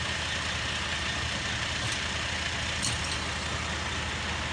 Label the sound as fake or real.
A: real